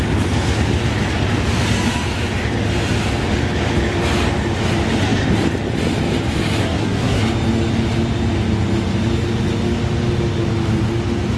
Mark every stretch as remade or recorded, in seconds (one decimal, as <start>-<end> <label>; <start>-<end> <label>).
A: 0.0-6.6 recorded; 6.6-7.2 remade; 7.2-11.4 recorded